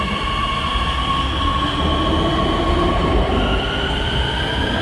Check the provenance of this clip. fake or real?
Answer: real